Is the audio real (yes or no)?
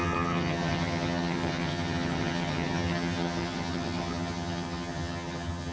no